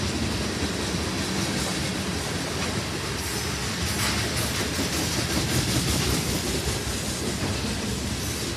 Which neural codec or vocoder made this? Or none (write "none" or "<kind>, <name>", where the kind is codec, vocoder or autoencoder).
none